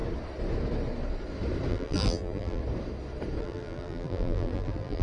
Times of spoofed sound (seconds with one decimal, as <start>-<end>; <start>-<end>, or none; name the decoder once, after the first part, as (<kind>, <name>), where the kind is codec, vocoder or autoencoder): 1.7-2.6 (vocoder, BigVGAN v2); 3.4-5.0